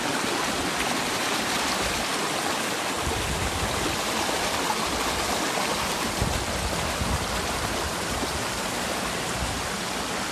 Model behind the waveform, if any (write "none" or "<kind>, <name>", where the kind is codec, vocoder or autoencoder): none